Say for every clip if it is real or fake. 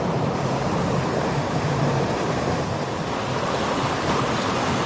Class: real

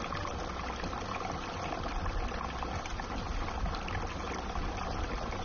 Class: real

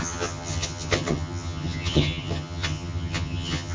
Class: fake